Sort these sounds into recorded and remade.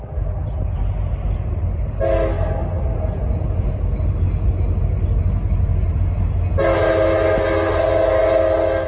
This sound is recorded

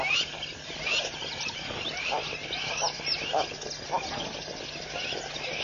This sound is recorded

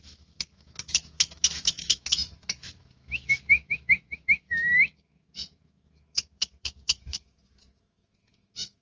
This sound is remade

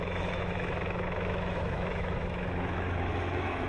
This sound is remade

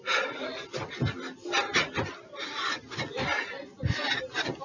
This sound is recorded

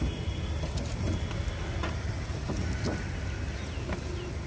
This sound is recorded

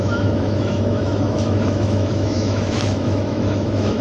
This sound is remade